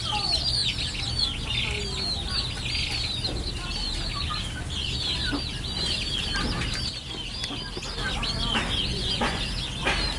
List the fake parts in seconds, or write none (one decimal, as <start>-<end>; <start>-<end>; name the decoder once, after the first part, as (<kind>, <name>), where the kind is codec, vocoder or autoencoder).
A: 8.9-9.4 (vocoder, Vocos)